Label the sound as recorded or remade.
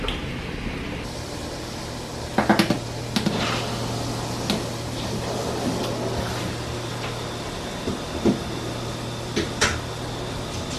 recorded